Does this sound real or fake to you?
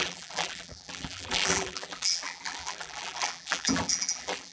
fake